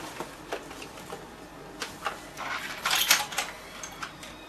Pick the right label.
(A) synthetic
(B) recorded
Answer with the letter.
A